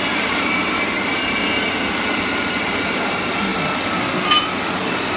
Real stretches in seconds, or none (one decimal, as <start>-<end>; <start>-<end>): 0.0-5.2